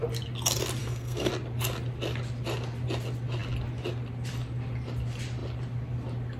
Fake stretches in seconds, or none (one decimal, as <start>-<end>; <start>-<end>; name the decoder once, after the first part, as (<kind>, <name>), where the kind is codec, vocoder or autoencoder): 0.8-1.3 (codec, SNAC)